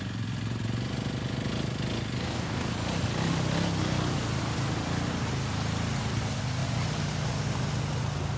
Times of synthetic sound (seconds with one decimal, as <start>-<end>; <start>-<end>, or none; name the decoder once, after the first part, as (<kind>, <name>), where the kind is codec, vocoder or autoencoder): 2.2-2.7 (codec, DAC)